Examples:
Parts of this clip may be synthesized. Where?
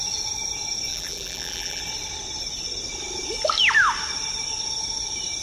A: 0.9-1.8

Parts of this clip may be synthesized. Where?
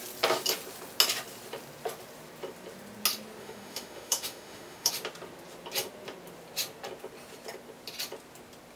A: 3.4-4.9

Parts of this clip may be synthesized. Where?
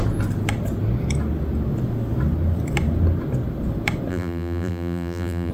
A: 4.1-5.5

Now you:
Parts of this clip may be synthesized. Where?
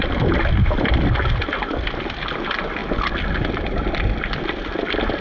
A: none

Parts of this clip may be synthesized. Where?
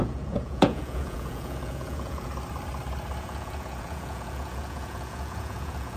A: 0.0-2.3; 3.2-6.0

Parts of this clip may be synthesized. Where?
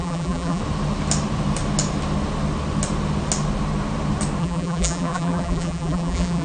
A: 0.0-0.6; 4.4-6.4